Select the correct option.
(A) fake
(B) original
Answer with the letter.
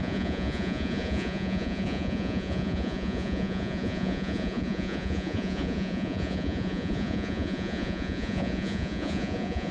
A